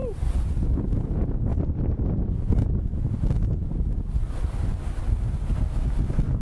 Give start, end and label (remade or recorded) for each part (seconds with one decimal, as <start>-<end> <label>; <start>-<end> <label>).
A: 0.0-6.4 recorded